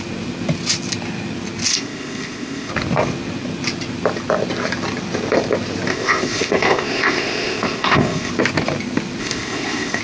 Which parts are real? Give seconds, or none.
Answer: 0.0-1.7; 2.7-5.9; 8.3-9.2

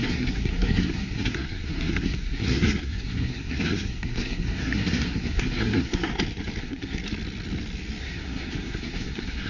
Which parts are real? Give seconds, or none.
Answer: 6.1-6.6; 7.0-8.0

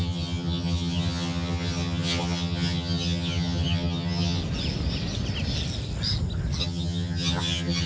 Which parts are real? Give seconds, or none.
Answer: 4.4-6.6

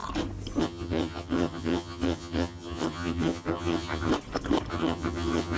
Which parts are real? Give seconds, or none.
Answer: 0.0-0.6; 4.1-4.7

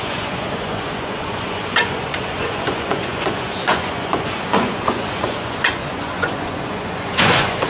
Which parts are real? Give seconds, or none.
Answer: none

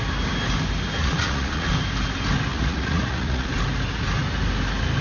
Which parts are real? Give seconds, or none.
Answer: 0.0-1.0; 1.7-2.5; 3.5-5.0

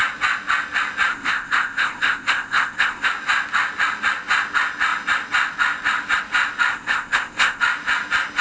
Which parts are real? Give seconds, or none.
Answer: 0.0-1.1; 3.1-6.7; 7.6-8.4

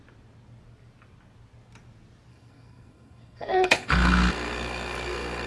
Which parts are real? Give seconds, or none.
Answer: 0.0-2.3